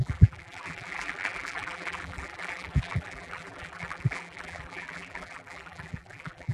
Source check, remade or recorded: remade